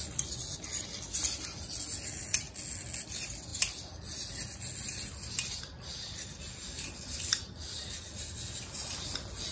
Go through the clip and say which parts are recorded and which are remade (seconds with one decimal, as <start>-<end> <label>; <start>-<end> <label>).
0.0-9.5 recorded